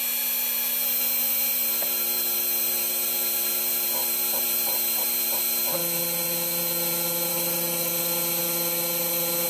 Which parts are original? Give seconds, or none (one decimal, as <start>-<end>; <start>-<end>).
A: 0.0-7.3; 7.9-9.5